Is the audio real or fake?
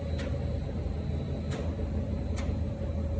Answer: real